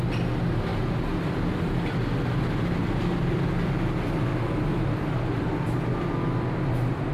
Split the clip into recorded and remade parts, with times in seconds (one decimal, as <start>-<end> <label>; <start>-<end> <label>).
0.0-7.1 recorded